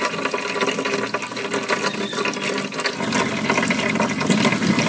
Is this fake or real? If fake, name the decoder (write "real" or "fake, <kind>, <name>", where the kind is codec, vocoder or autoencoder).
real